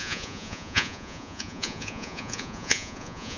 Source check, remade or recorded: remade